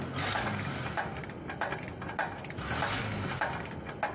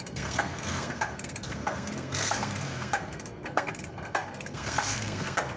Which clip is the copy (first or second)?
second